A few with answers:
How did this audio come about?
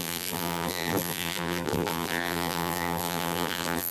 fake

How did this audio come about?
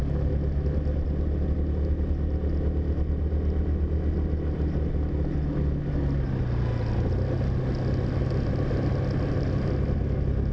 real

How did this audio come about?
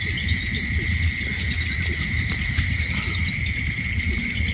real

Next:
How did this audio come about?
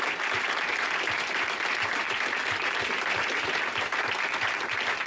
real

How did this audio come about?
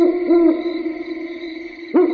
real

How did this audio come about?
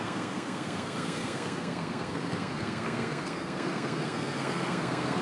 fake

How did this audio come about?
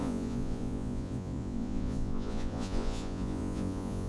fake